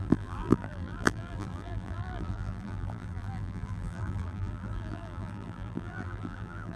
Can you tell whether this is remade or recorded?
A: remade